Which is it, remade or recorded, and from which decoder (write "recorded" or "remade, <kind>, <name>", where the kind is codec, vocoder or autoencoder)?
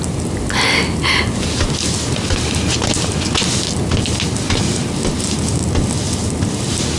recorded